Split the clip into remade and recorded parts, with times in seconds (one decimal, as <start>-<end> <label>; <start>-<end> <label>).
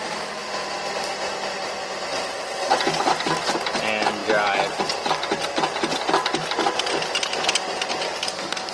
0.0-2.1 recorded; 2.1-2.8 remade; 2.8-8.7 recorded